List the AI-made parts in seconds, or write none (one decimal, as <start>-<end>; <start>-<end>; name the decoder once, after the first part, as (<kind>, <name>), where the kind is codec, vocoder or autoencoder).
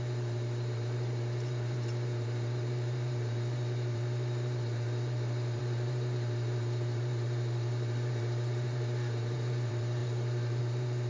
0.0-11.1 (vocoder, BigVGAN v2)